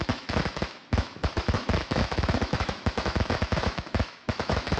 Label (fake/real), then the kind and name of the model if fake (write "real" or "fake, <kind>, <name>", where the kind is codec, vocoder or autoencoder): fake, autoencoder, DAC-VAE